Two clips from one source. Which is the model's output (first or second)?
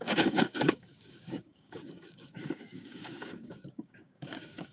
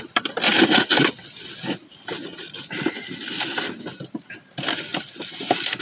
first